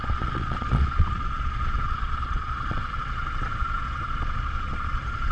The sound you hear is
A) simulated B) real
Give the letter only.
A